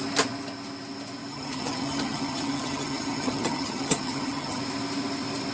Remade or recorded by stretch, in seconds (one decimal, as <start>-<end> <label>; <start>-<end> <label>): 0.0-1.3 recorded; 1.3-4.6 remade; 4.6-5.5 recorded